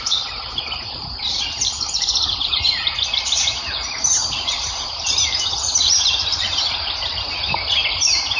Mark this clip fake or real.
fake